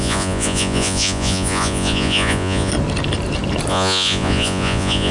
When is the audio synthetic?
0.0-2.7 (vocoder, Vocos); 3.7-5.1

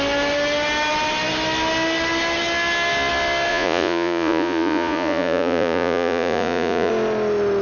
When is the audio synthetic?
3.5-6.9 (vocoder, Vocos)

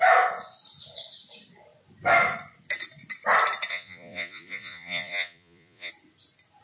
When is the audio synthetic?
3.7-5.9 (vocoder, Vocos)

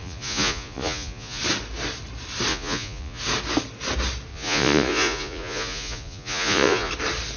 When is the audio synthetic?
0.0-1.4 (vocoder, Vocos); 2.5-3.2; 4.3-6.9

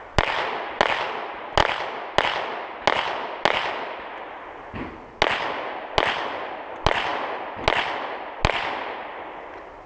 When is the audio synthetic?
none

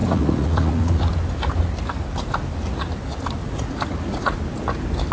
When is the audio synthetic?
0.0-1.1 (vocoder, Vocos); 3.4-4.4

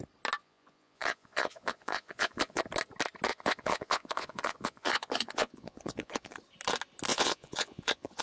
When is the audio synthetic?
0.4-2.6 (vocoder, Vocos); 3.3-6.4; 7.1-8.2